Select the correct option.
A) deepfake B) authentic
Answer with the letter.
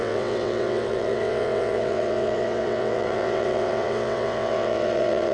A